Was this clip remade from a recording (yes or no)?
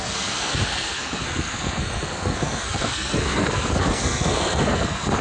yes